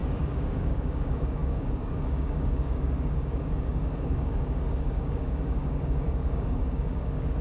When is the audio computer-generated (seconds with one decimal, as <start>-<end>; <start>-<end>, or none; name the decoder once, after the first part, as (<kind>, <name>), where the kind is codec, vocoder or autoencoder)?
0.0-7.4 (codec, DAC)